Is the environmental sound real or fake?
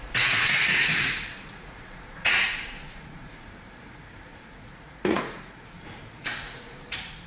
fake